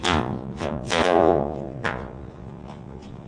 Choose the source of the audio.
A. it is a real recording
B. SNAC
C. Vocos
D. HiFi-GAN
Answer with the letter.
C